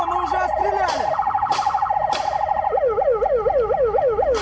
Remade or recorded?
recorded